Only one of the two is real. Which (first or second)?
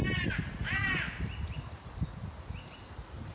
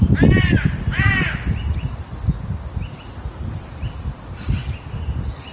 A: second